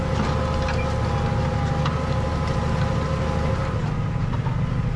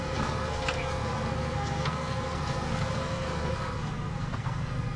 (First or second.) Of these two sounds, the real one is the first